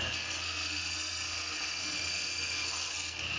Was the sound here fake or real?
fake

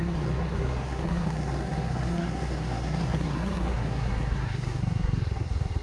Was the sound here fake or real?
fake